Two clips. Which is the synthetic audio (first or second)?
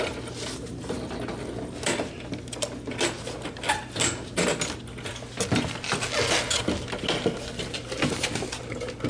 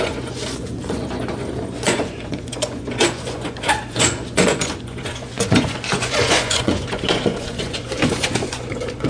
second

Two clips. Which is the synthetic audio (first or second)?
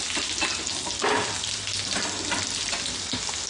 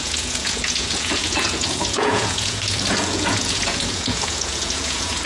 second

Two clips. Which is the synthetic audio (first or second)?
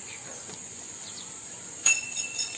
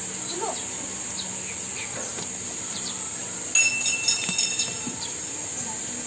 first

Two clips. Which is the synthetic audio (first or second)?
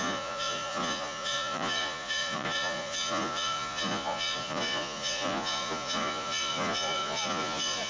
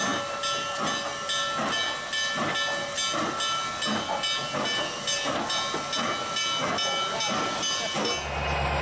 first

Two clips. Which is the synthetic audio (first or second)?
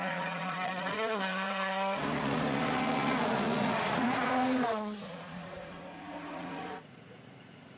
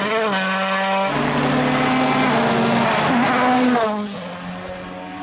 first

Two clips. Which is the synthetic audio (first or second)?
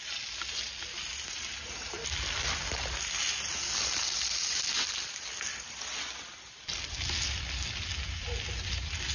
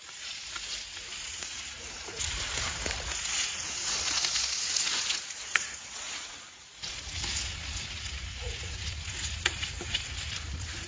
second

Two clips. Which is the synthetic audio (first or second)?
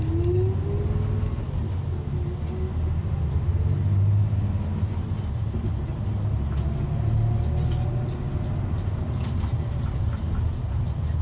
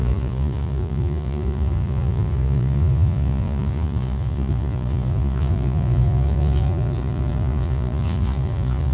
second